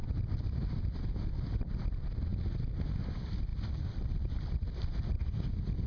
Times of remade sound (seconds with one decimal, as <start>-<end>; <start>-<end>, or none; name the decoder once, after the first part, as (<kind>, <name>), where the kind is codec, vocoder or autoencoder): 2.3-3.0 (vocoder, BigVGAN v2); 3.5-5.2

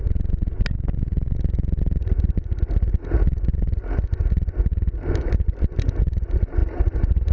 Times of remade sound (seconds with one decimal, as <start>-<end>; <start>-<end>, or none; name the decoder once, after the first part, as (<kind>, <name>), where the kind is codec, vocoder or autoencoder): 6.6-7.3 (vocoder, BigVGAN v2)

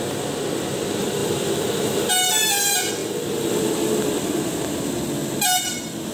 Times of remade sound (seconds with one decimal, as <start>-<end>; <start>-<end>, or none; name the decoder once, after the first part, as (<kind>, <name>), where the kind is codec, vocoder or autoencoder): 3.0-3.6 (vocoder, BigVGAN v2)

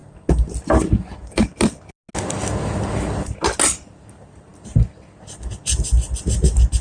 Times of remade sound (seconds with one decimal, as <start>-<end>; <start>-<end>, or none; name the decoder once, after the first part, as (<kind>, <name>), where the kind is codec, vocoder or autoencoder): 4.1-4.5 (vocoder, BigVGAN v2)

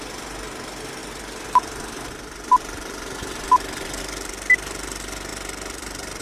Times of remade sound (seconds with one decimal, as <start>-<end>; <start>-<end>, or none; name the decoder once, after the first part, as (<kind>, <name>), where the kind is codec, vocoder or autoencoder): 1.0-4.0 (vocoder, BigVGAN v2); 5.3-6.2

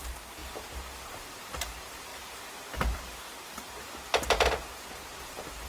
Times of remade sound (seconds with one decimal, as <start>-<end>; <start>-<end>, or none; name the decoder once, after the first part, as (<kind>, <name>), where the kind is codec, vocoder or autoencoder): 2.1-3.3 (vocoder, BigVGAN v2)

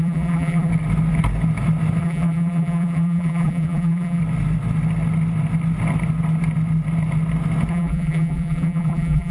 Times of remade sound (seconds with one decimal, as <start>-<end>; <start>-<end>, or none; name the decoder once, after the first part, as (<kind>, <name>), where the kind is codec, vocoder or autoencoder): 0.0-0.7 (vocoder, BigVGAN v2); 2.0-4.2; 7.7-9.3